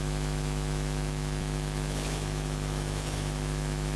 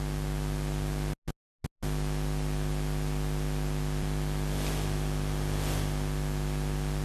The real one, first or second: second